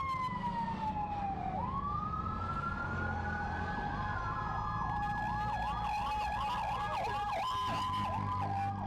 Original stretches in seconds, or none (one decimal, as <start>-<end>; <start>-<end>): 0.0-8.9